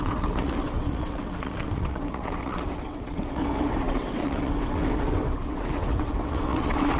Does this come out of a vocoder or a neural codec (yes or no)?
yes